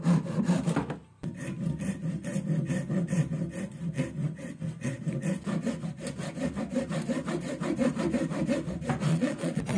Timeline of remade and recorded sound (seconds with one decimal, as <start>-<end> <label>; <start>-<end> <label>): 0.0-9.1 recorded; 9.1-9.8 remade